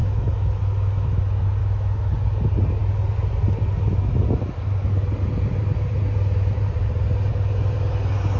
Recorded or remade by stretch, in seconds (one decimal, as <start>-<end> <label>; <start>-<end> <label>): 0.0-1.2 remade; 1.2-1.6 recorded; 1.6-2.1 remade; 2.1-8.4 recorded